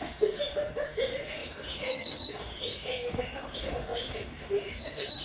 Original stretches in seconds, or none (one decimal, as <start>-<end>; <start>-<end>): none